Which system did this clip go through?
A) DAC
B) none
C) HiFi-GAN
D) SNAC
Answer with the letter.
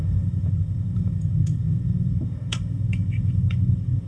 A